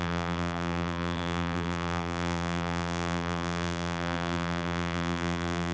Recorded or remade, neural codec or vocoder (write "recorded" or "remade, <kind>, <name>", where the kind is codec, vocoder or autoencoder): remade, vocoder, BigVGAN v2